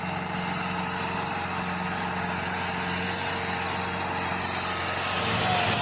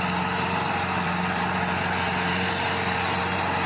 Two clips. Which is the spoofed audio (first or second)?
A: second